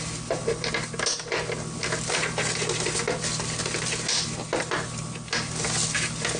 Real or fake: real